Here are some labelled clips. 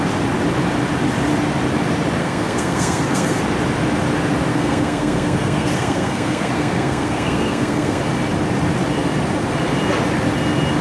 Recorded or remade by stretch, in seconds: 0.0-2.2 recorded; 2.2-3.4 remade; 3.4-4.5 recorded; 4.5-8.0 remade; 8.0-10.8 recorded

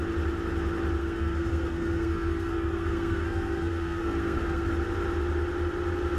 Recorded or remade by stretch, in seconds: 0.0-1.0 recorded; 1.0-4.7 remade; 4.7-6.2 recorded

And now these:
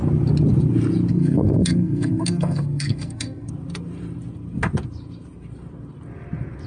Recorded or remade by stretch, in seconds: 0.0-1.1 recorded; 1.1-3.5 remade; 3.5-6.7 recorded

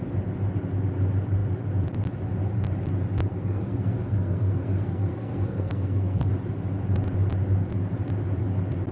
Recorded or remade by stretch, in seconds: 0.0-3.3 recorded; 3.3-6.3 remade; 6.3-8.9 recorded

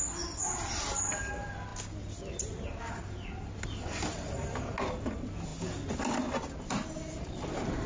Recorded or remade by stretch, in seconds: 0.0-7.9 recorded

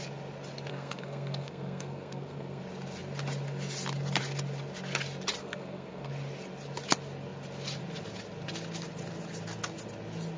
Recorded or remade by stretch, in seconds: 0.0-0.7 recorded; 0.7-2.6 remade; 2.6-5.4 recorded; 5.4-6.1 remade; 6.1-10.4 recorded